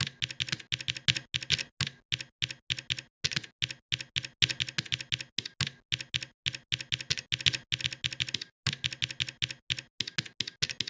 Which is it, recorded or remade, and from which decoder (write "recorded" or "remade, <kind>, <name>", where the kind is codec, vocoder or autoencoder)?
recorded